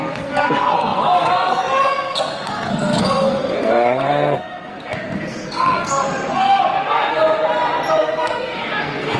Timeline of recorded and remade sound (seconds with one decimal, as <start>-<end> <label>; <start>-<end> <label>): 0.0-7.4 remade; 7.4-7.9 recorded; 7.9-9.2 remade